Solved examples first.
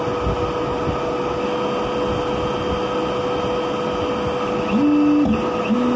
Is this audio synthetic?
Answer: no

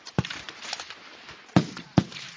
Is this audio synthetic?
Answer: yes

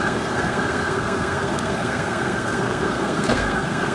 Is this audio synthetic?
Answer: yes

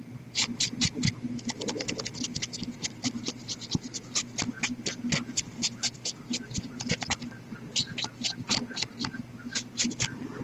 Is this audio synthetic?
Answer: no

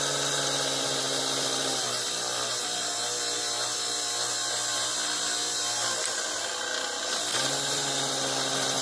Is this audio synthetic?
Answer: no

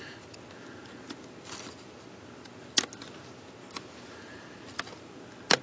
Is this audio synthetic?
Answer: no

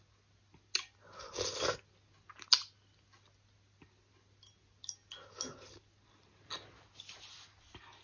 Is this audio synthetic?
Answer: no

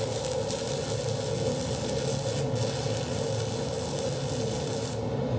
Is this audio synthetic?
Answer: no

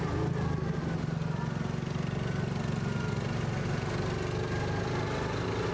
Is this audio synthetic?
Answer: no